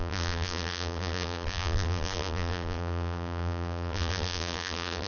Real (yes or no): no